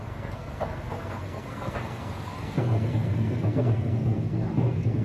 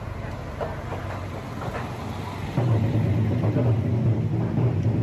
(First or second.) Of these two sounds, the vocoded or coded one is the first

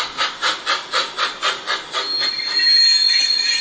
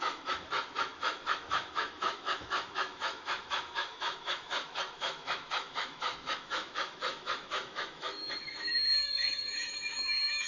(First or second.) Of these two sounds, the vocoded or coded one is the second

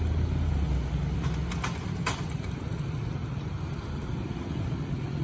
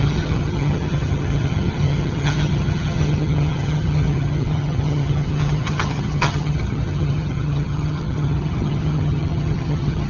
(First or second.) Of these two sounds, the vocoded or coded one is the second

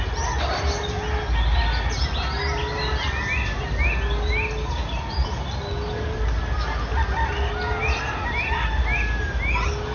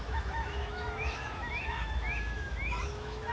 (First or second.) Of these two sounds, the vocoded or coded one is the second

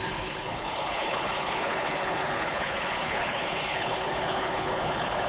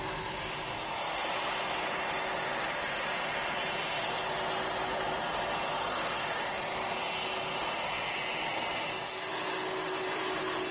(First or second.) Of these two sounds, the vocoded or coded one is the first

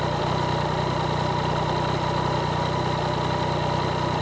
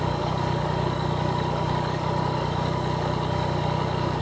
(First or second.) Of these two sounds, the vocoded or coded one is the second